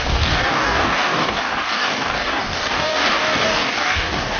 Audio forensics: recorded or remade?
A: remade